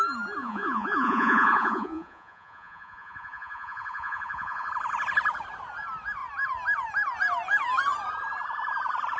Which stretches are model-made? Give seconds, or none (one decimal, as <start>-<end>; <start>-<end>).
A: 0.4-4.7